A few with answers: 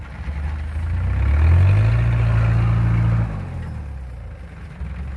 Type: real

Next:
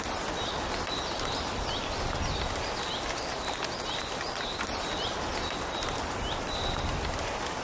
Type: real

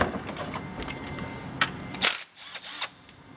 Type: real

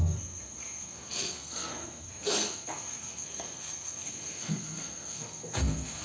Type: fake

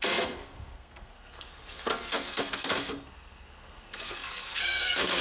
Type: fake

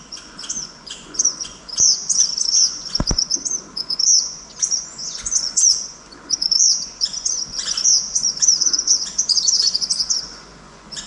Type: fake